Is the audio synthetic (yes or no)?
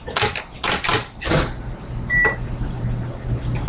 no